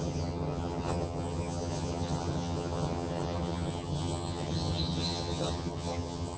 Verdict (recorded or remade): remade